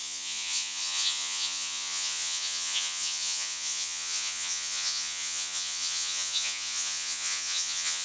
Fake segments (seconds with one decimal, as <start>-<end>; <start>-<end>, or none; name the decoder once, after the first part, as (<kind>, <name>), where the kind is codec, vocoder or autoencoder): 0.0-8.0 (vocoder, Vocos)